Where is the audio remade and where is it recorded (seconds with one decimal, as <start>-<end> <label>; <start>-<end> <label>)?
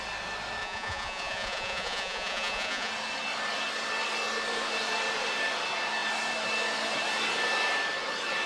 0.0-0.6 recorded; 0.6-2.9 remade; 2.9-8.5 recorded